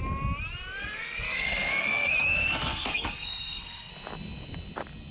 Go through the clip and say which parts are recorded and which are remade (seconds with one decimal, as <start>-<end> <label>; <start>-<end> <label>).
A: 0.0-0.8 recorded; 0.8-3.9 remade; 3.9-5.1 recorded

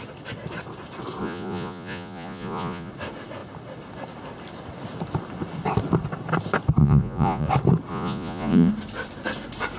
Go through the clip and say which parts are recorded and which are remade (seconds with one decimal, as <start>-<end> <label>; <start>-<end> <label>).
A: 0.0-1.2 recorded; 1.2-2.9 remade; 2.9-6.8 recorded; 6.8-7.5 remade; 7.5-7.9 recorded; 7.9-8.7 remade; 8.7-9.8 recorded

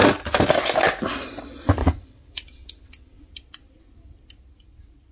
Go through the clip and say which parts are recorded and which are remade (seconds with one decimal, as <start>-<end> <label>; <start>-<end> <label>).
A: 0.0-1.8 recorded; 1.8-3.3 remade; 3.3-5.1 recorded

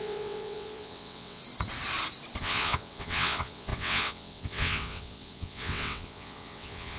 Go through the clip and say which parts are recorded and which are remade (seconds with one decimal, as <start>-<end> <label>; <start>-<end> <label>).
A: 0.0-1.4 remade; 1.4-2.4 recorded; 2.4-7.0 remade

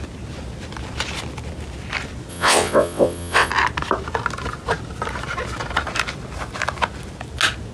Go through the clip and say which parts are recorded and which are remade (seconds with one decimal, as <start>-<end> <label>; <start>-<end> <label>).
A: 0.0-2.3 recorded; 2.3-3.5 remade; 3.5-7.7 recorded